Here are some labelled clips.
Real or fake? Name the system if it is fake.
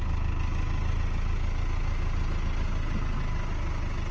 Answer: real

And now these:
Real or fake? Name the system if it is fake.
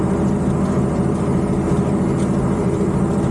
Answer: fake, vocoder, BigVGAN v2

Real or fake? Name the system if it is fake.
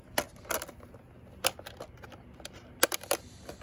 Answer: real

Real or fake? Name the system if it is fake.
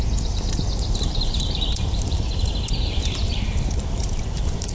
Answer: fake, vocoder, BigVGAN v2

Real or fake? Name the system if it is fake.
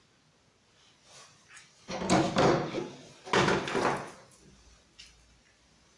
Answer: real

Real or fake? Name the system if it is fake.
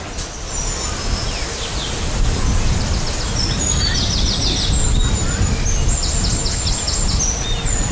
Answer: real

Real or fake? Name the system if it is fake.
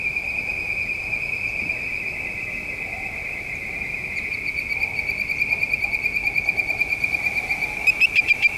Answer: real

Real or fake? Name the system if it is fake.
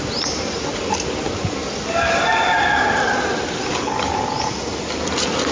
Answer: real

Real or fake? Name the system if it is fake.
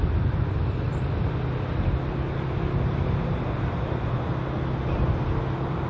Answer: real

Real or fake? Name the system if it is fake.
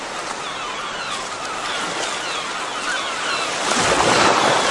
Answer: real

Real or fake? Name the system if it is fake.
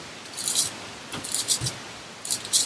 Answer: fake, vocoder, BigVGAN v2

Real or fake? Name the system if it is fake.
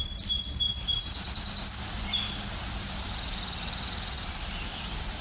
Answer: real